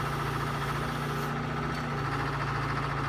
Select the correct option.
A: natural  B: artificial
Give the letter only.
A